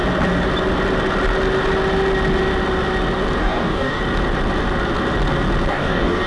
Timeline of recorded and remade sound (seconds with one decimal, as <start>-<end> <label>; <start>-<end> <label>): 0.0-3.4 recorded; 3.4-4.0 remade; 4.0-5.7 recorded; 5.7-6.3 remade